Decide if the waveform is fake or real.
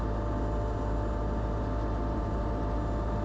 real